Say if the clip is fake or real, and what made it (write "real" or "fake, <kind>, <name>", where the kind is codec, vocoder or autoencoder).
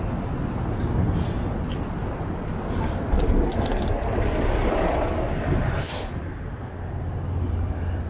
real